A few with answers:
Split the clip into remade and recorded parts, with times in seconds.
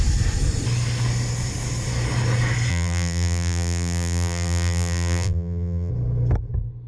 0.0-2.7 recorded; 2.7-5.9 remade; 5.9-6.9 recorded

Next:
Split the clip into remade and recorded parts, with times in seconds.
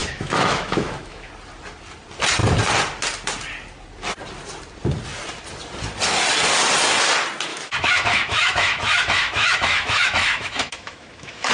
0.0-1.3 remade; 1.3-7.5 recorded; 7.5-11.5 remade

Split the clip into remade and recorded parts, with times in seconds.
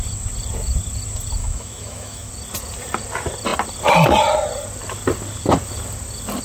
0.0-1.4 recorded; 1.4-2.3 remade; 2.3-6.4 recorded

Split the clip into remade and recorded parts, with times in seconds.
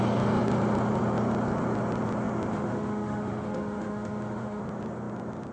0.0-2.5 recorded; 2.5-4.6 remade; 4.6-5.5 recorded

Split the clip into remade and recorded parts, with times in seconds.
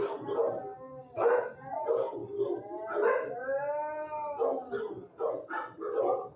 0.0-0.6 remade; 0.6-6.4 recorded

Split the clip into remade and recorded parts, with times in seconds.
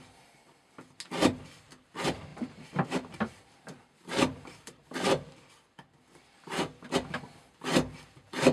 0.0-2.3 recorded; 2.3-5.5 remade; 5.5-8.5 recorded